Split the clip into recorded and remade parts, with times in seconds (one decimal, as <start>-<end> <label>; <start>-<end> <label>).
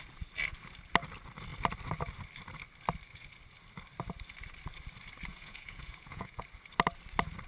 0.0-5.3 recorded; 5.3-6.4 remade; 6.4-7.5 recorded